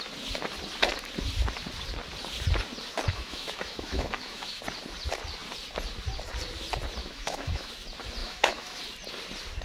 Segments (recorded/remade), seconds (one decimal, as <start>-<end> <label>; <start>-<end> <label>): 0.0-3.1 recorded; 3.1-4.6 remade; 4.6-7.0 recorded; 7.0-7.7 remade; 7.7-8.2 recorded; 8.2-8.8 remade; 8.8-9.6 recorded